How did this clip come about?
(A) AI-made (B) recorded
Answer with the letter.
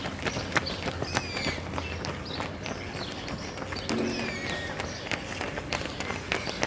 B